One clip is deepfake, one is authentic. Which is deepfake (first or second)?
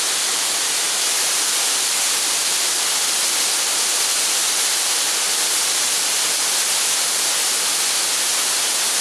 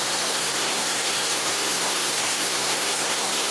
second